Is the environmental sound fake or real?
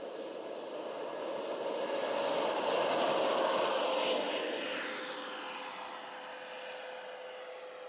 real